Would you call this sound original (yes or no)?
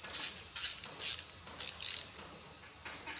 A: yes